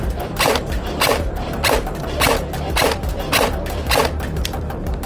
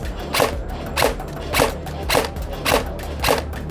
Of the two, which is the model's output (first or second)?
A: first